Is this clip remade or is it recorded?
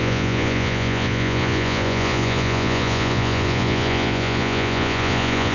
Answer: remade